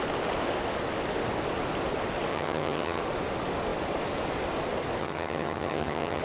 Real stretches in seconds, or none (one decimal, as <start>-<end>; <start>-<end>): 0.0-2.3; 3.0-5.0